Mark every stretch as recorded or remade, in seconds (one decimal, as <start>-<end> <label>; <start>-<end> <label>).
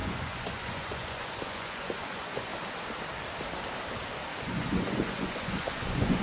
0.0-2.5 remade; 2.5-4.4 recorded; 4.4-6.2 remade